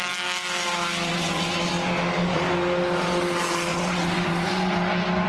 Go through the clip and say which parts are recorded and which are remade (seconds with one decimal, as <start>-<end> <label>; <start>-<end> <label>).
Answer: 0.0-1.1 recorded; 1.1-1.7 remade; 1.7-3.7 recorded; 3.7-4.7 remade; 4.7-5.3 recorded